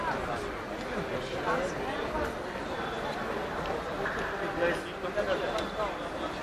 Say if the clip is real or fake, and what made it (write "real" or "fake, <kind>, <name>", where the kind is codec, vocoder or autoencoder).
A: real